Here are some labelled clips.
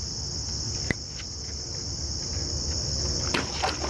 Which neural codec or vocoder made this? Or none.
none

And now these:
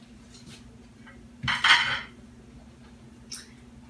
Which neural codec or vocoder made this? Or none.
none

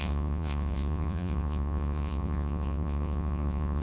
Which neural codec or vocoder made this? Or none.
vocoder, Vocos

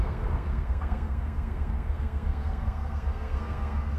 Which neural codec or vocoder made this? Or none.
codec, SNAC